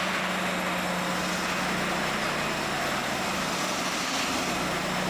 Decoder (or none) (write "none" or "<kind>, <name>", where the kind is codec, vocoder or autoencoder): none